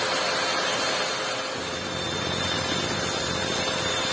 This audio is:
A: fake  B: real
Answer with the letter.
B